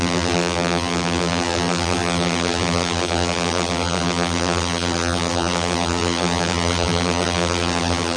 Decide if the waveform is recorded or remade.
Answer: remade